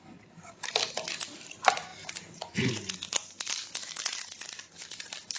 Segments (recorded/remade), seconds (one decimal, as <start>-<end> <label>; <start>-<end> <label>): 0.0-1.9 recorded; 1.9-2.7 remade; 2.7-3.2 recorded; 3.2-4.0 remade; 4.0-5.4 recorded